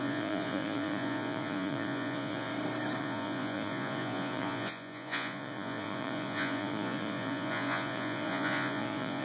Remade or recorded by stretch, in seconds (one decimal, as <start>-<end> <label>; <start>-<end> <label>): 0.0-2.5 remade; 2.5-3.0 recorded; 3.0-9.2 remade